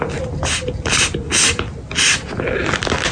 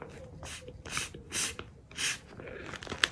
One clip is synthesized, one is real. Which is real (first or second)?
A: first